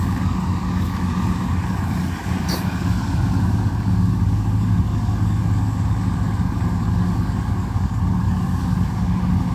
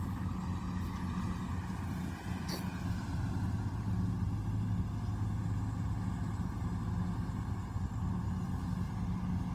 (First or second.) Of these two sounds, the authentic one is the second